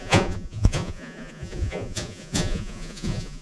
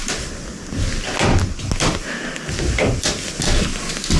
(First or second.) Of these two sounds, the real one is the second